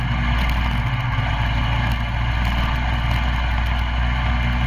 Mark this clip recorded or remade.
recorded